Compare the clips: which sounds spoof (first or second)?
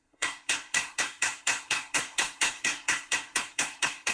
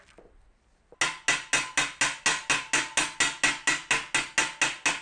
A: first